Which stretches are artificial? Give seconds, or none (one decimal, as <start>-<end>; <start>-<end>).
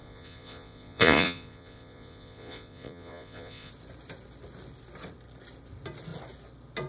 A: 0.0-3.7